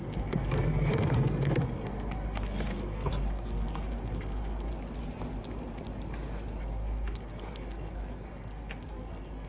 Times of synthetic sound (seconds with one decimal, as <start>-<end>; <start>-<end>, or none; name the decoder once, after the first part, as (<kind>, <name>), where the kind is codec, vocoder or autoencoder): 0.0-4.7 (codec, SNAC); 6.6-9.5